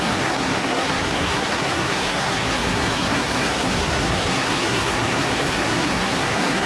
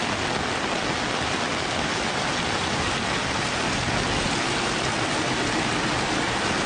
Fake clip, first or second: first